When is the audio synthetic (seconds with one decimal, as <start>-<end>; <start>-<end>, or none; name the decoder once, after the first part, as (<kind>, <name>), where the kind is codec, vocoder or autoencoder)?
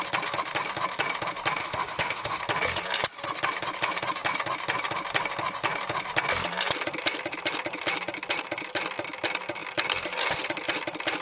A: 1.6-2.4 (autoencoder, DAC-VAE)